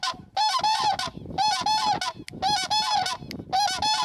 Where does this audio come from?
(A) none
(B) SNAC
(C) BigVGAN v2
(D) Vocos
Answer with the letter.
A